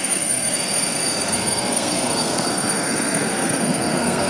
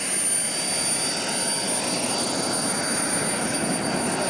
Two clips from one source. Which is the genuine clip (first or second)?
second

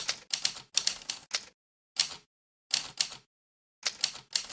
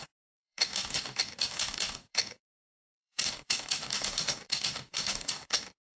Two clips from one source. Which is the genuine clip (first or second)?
first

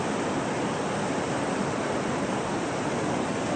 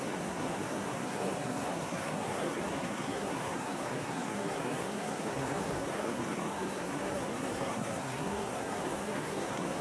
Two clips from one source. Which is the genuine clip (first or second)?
first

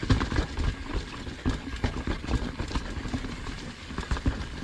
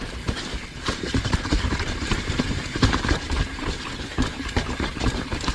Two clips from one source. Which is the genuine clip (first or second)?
first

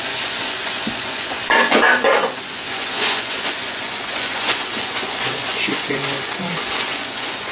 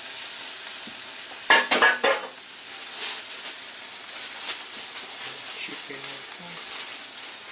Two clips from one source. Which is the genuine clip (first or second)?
second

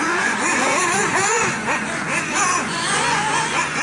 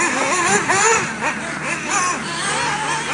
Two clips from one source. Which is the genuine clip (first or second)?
second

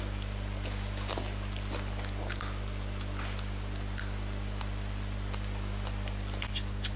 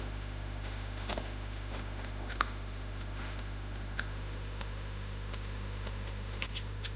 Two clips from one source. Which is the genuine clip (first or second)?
first